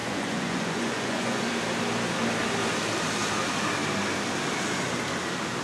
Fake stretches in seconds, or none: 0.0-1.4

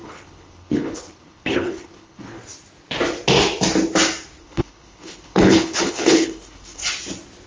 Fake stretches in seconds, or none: 0.0-2.4; 4.4-6.8

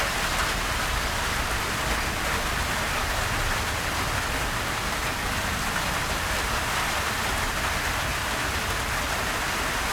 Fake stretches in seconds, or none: 8.1-8.7

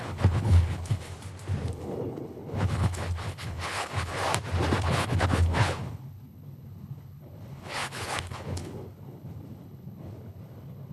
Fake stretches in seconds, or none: 0.0-1.1; 1.7-4.2; 4.8-10.9

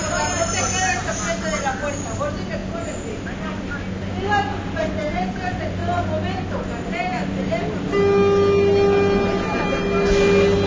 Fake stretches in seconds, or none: none

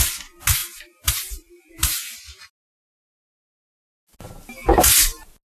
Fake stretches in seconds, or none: 0.6-3.0